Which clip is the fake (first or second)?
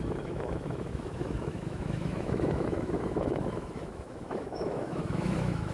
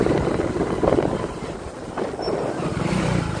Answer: first